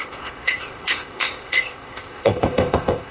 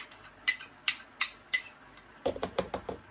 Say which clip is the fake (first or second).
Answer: first